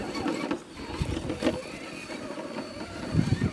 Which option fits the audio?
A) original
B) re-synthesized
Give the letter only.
A